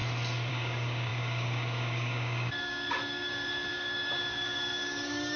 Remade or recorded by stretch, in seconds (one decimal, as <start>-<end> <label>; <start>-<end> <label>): 0.0-0.5 recorded; 0.5-5.4 remade